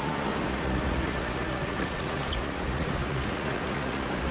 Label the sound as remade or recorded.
remade